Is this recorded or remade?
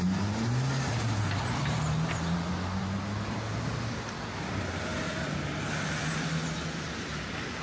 recorded